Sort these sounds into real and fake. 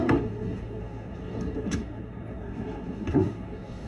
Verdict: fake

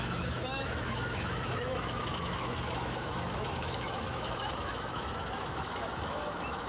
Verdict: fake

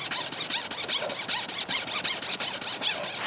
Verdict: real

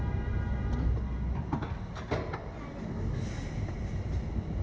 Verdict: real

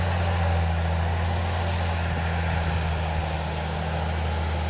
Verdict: real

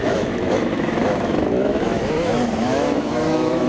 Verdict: fake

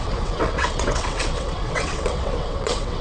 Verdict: fake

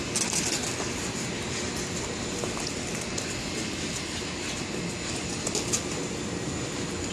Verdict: real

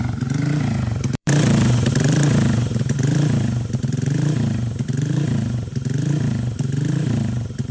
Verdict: fake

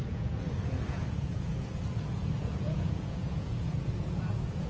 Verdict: fake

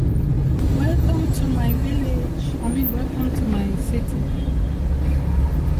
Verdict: real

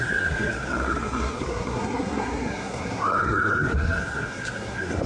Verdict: fake